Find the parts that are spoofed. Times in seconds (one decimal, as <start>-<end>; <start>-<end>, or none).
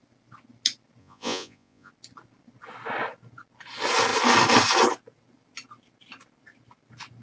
1.0-1.9